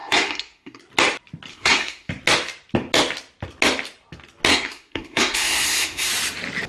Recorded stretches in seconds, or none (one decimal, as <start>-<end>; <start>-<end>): 0.8-1.5; 2.1-4.5; 6.1-6.7